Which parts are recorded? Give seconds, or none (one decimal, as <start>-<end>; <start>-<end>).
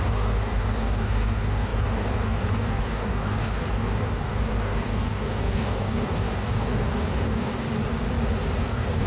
7.5-8.6